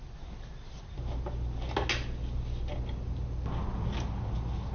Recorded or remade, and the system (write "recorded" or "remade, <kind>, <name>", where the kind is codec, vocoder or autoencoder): recorded